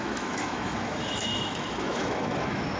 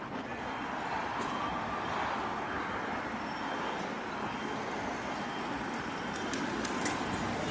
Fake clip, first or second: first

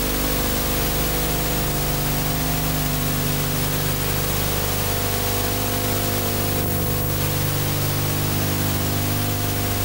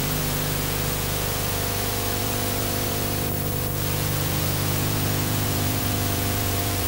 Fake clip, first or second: second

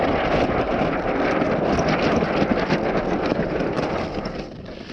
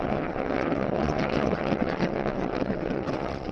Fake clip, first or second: second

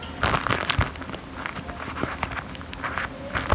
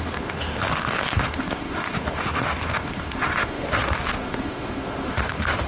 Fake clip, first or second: second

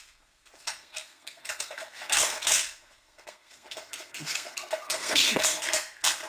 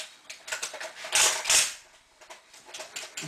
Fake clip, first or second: first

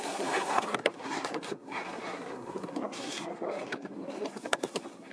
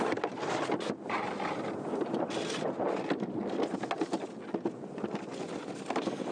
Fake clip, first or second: first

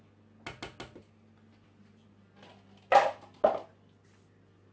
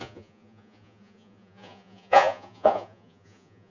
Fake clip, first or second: second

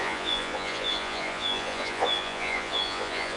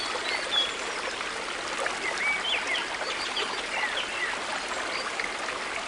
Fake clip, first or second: first